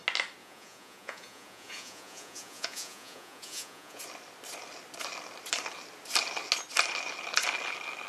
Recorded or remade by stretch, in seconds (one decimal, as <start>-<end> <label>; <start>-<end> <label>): 0.0-0.4 recorded; 0.4-4.0 remade; 4.0-8.1 recorded